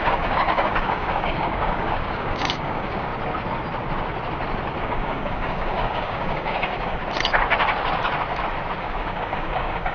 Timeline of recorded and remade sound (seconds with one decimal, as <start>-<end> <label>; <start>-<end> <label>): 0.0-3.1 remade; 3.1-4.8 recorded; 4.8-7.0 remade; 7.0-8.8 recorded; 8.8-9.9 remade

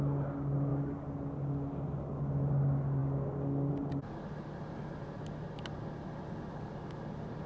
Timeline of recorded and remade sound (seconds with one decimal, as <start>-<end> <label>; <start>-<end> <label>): 0.0-7.5 recorded

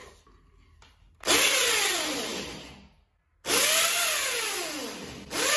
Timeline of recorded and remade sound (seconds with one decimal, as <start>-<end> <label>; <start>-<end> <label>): 0.0-5.6 recorded

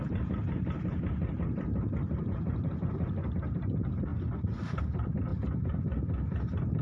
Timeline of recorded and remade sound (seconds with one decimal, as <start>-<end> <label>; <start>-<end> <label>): 0.0-4.1 remade; 4.1-4.8 recorded; 4.8-5.3 remade; 5.3-6.8 recorded

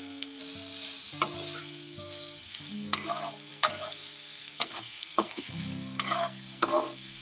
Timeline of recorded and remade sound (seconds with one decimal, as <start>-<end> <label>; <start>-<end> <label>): 0.0-0.4 remade; 0.4-1.6 recorded; 1.6-7.2 remade

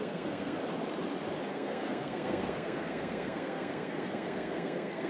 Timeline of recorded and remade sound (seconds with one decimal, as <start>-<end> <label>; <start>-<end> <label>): 0.0-0.6 remade; 0.6-1.5 recorded; 1.5-5.1 remade